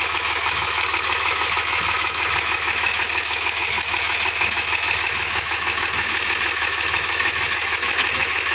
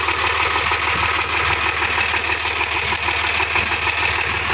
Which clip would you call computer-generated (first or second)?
first